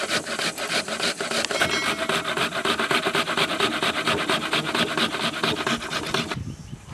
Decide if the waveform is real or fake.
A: real